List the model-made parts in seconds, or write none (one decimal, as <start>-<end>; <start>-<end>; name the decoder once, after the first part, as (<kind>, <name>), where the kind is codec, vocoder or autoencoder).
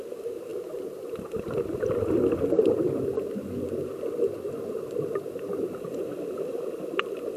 0.0-7.4 (vocoder, BigVGAN v2)